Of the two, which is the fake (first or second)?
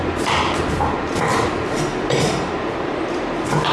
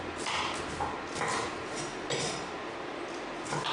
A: first